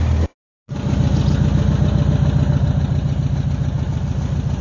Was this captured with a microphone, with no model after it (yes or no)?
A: yes